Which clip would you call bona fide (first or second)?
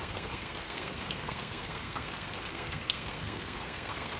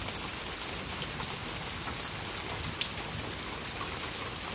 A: second